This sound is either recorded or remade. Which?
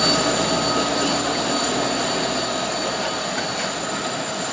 recorded